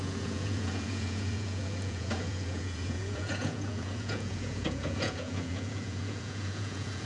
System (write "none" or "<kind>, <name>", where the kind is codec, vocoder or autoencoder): vocoder, Vocos